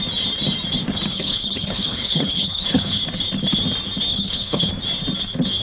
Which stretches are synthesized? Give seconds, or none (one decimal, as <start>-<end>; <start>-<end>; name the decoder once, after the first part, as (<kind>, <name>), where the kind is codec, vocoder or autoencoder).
1.1-3.0 (codec, HILCodec); 4.1-4.7